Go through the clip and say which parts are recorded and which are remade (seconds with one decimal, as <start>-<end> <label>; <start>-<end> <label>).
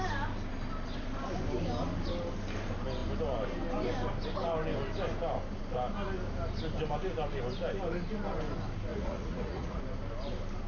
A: 0.0-8.9 recorded; 8.9-9.8 remade; 9.8-10.7 recorded